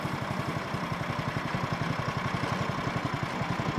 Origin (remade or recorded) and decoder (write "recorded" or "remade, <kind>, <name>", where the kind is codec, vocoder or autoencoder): recorded